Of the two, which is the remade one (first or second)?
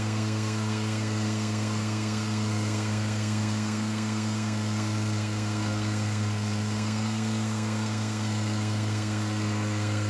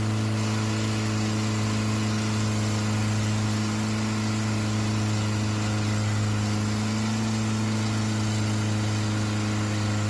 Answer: first